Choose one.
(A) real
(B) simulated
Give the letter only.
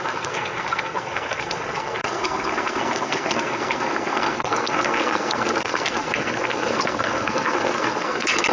B